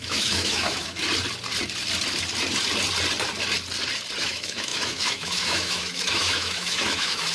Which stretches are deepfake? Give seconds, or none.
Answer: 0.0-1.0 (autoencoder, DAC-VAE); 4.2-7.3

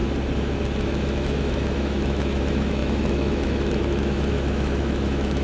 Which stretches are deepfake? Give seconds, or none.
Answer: 0.8-5.4 (autoencoder, DAC-VAE)

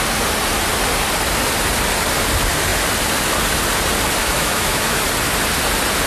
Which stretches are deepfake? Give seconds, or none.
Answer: 4.2-5.0 (autoencoder, DAC-VAE)

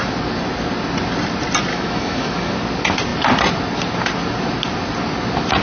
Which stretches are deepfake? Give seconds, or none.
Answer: 1.7-2.5 (autoencoder, DAC-VAE)